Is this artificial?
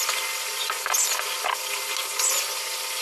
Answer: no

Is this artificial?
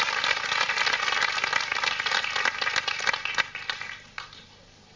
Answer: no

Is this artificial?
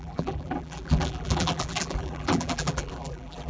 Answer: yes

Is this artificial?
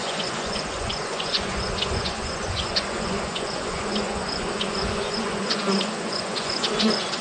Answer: yes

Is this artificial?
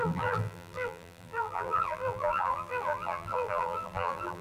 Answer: yes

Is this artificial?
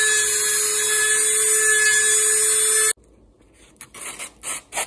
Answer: no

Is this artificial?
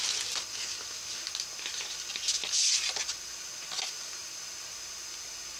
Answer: no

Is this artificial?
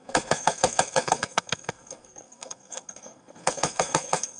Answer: yes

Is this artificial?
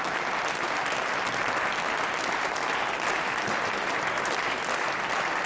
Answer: no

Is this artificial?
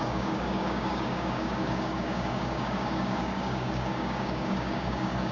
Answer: yes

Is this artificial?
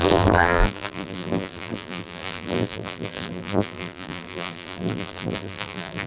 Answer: yes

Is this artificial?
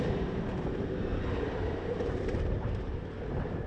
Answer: yes